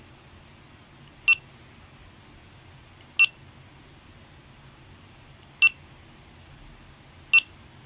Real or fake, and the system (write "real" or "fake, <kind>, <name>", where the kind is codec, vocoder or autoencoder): real